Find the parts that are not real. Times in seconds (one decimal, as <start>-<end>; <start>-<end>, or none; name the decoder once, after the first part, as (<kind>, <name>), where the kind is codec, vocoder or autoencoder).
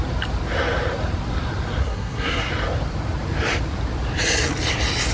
1.8-2.5 (codec, SNAC)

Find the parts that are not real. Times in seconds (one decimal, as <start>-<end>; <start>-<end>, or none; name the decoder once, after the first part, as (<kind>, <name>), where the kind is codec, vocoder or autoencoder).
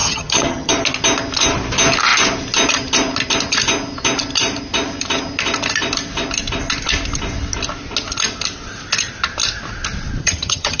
0.0-0.7 (vocoder, HiFi-GAN); 10.2-10.8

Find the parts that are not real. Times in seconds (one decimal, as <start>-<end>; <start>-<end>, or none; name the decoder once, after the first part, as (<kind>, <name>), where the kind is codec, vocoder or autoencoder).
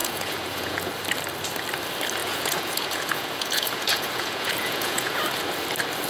0.0-0.9 (vocoder, Vocos); 2.2-5.2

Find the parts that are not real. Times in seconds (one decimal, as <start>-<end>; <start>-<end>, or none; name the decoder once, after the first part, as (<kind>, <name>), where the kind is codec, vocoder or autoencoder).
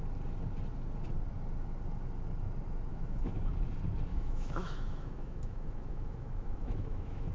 2.9-3.5 (autoencoder, DAC-VAE); 4.1-7.3